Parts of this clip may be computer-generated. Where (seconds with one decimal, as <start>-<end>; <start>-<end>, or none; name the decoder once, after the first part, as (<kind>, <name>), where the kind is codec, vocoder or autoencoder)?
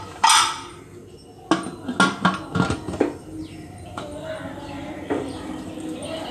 3.4-5.7 (vocoder, BigVGAN v2)